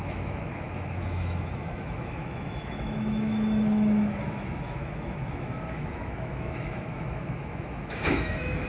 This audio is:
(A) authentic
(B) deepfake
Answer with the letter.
B